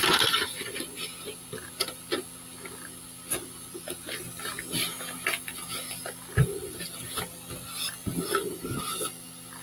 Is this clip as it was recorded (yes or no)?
yes